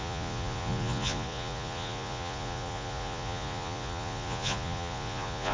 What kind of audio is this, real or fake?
fake